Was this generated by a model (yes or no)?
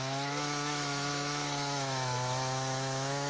yes